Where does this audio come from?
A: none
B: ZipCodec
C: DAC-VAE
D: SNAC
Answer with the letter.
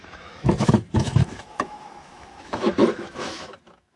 C